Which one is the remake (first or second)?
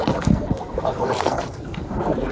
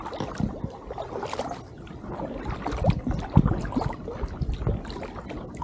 first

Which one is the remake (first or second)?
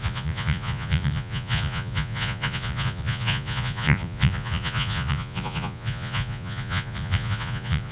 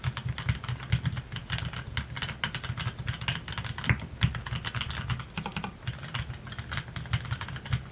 first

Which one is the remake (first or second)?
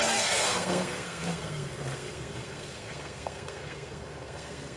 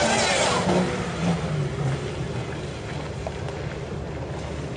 first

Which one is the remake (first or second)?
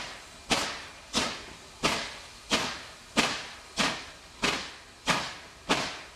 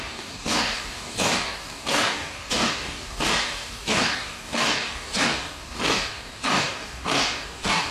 second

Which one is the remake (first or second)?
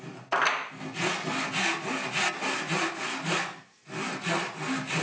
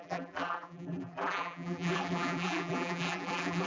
second